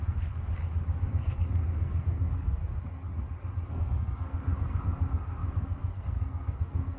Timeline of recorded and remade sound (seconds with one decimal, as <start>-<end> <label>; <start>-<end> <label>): 0.0-0.5 remade; 0.5-1.1 recorded; 1.1-2.6 remade; 2.6-3.7 recorded; 3.7-7.0 remade